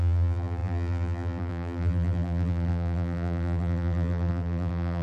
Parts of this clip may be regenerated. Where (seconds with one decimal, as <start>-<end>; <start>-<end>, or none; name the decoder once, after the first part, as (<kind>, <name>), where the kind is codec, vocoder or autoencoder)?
0.0-5.0 (vocoder, BigVGAN v2)